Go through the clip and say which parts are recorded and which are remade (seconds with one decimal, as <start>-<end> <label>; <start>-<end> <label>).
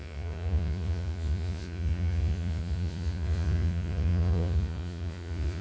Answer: 0.0-5.6 remade